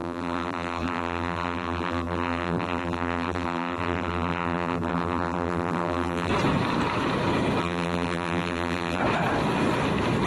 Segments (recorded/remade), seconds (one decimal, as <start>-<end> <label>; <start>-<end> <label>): 0.0-6.3 remade; 6.3-7.6 recorded; 7.6-9.0 remade; 9.0-10.3 recorded